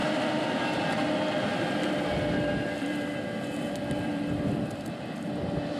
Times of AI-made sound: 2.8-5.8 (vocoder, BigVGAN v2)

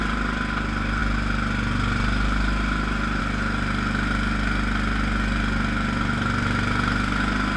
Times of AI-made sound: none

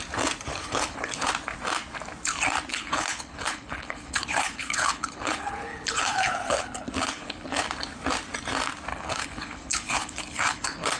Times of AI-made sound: 0.5-1.3 (codec, HILCodec); 2.7-7.6; 8.9-11.0

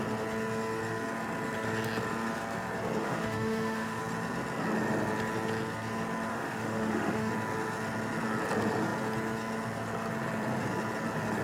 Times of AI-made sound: 3.0-4.0 (autoencoder, DAC-VAE); 6.3-7.3

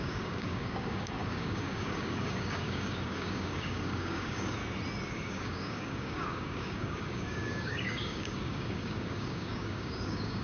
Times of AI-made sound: 0.0-4.6 (codec, DAC); 5.1-10.4

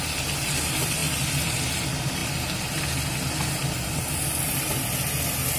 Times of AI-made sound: 1.0-1.6 (vocoder, BigVGAN v2)